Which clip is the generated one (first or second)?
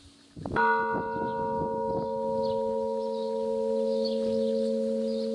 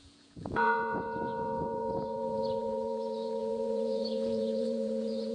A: second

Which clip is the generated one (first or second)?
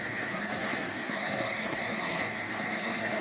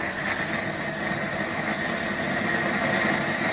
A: first